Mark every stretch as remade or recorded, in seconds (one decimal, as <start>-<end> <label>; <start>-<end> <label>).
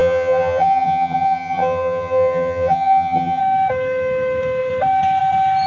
0.0-3.4 remade; 3.4-5.7 recorded